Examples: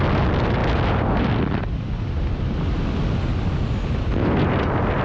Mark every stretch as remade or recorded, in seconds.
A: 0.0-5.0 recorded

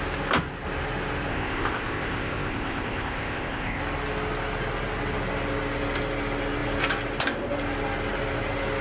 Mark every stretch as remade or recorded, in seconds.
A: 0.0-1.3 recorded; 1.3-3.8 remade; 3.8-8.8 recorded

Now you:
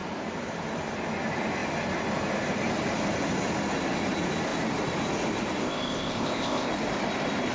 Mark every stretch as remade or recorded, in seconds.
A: 0.0-5.6 recorded; 5.6-6.7 remade; 6.7-7.5 recorded

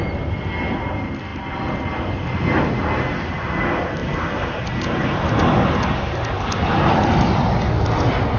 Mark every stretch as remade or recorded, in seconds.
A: 0.0-8.4 recorded

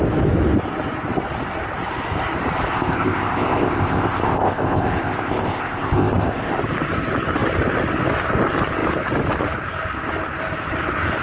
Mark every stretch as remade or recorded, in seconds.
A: 0.0-2.7 recorded; 2.7-6.5 remade; 6.5-11.2 recorded

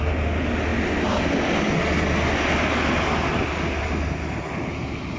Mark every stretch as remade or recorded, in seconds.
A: 0.0-5.2 recorded

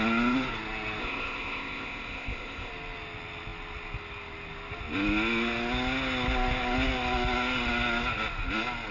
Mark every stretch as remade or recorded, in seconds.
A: 0.0-1.0 recorded; 1.0-2.7 remade; 2.7-8.9 recorded